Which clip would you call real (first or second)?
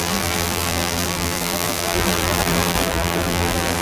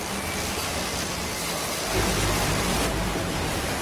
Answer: second